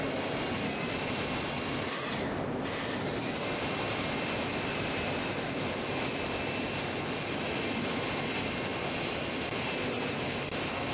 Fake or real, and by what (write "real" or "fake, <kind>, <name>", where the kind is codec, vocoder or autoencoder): real